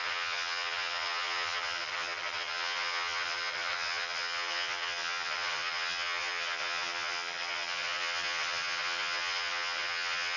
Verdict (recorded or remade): remade